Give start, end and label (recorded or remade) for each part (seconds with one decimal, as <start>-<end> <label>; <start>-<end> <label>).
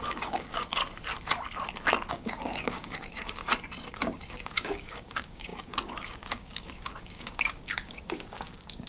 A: 0.0-0.8 remade; 0.8-2.1 recorded; 2.1-3.4 remade; 3.4-3.9 recorded; 3.9-8.9 remade